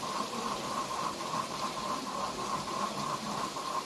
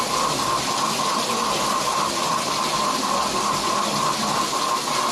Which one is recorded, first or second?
second